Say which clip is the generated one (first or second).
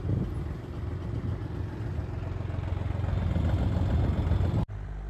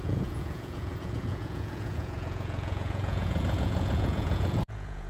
second